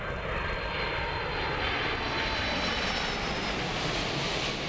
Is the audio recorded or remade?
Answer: recorded